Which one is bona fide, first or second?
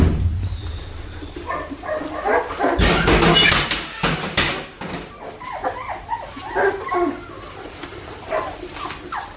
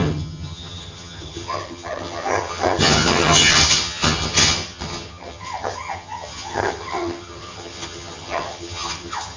first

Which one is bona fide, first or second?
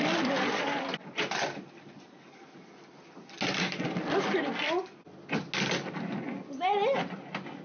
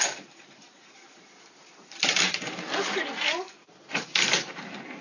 first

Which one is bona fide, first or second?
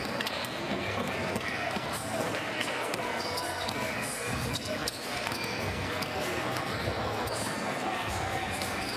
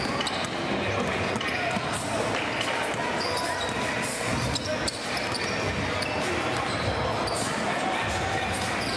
second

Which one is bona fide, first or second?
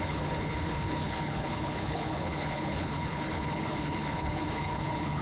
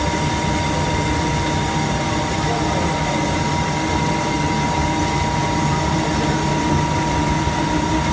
second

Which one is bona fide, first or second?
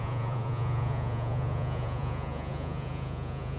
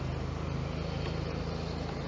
second